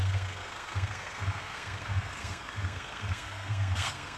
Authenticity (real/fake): fake